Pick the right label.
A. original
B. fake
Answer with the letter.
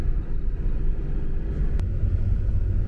A